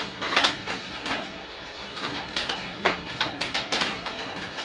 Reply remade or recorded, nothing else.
remade